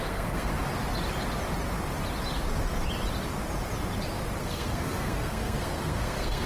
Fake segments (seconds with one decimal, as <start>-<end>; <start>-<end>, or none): 0.0-0.5; 4.4-6.5